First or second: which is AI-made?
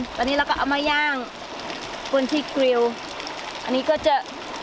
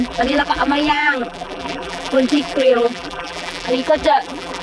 second